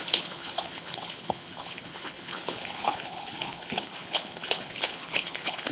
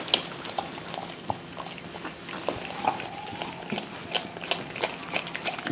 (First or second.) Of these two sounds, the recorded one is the second